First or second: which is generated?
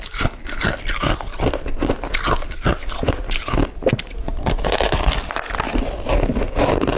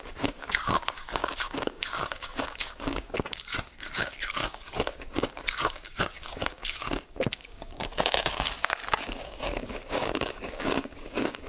second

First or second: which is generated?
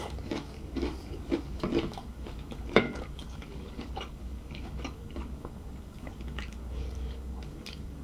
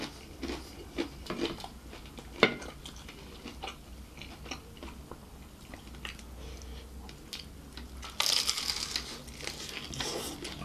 first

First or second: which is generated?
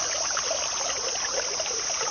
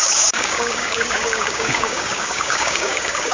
second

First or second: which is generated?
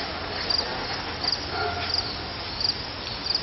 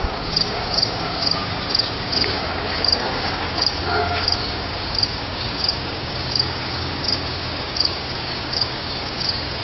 second